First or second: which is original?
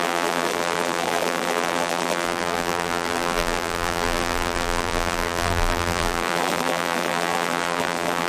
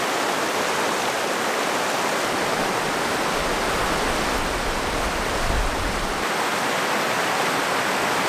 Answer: second